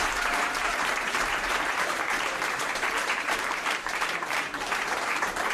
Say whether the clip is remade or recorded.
remade